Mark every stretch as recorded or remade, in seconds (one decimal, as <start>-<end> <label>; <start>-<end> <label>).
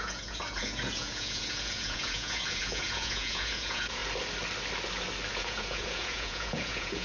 0.0-4.0 remade; 4.0-5.3 recorded; 5.3-7.0 remade